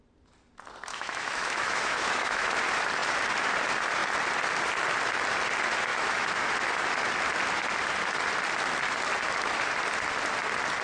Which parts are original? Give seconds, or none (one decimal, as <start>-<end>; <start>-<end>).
0.0-0.9; 2.5-5.9; 6.5-10.8

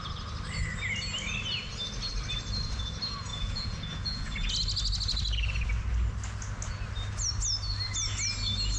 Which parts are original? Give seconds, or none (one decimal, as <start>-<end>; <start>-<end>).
0.0-3.3; 4.5-8.8

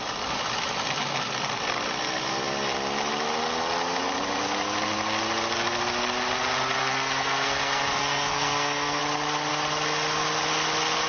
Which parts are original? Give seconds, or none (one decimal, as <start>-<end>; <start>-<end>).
0.0-6.8; 9.0-11.1

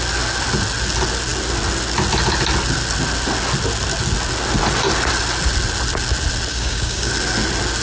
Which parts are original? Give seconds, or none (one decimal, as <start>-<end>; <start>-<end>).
0.0-6.5; 7.1-7.8

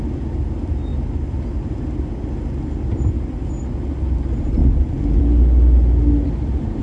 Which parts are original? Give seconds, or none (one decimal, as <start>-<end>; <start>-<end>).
0.0-6.8

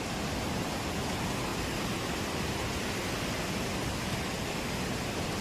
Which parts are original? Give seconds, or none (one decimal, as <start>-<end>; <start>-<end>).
0.0-5.4